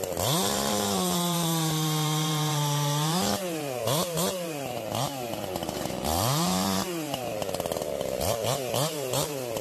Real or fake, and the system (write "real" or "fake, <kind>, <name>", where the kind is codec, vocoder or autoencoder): fake, vocoder, BigVGAN v2